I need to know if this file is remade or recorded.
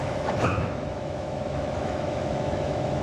remade